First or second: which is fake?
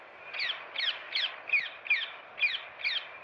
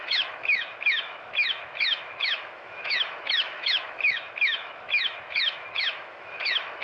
second